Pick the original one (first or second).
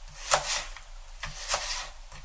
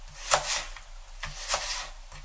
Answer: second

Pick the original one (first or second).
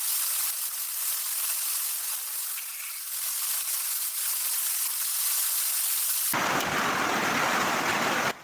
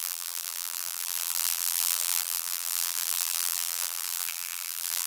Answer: first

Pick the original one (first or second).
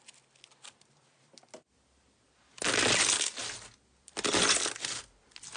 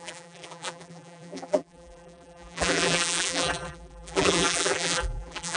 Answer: first